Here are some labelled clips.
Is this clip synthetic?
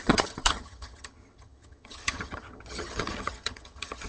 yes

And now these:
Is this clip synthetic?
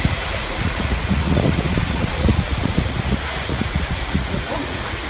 yes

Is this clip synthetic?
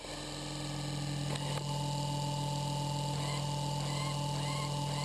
no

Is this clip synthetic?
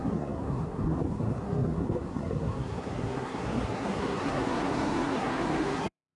yes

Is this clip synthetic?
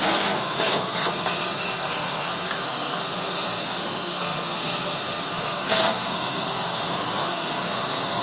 yes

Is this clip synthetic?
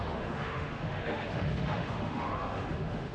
yes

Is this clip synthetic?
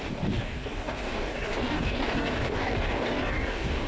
yes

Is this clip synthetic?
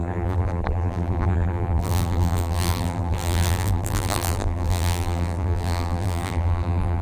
yes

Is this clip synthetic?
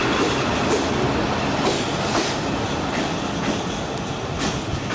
no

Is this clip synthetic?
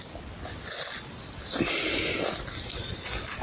no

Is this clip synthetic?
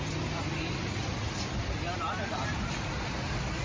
no